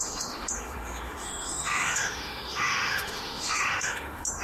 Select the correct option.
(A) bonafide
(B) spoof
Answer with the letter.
B